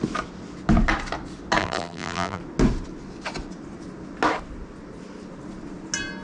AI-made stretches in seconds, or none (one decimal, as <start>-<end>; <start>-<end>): 1.6-2.4